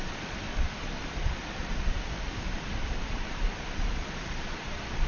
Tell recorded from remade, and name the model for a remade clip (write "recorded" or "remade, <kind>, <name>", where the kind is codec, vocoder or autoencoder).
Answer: remade, vocoder, Vocos